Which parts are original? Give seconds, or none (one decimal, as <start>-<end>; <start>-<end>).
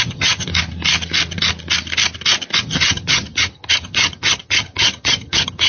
0.5-2.6